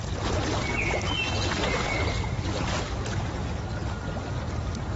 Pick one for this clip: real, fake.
real